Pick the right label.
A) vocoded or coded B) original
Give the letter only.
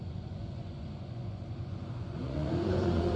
A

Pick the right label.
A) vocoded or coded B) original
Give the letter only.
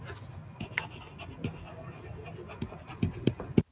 B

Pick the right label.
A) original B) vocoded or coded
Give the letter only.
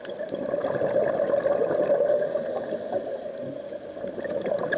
A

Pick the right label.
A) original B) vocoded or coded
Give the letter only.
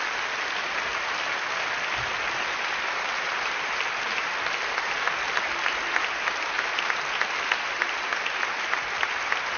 A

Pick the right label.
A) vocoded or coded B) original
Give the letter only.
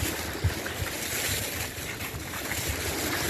B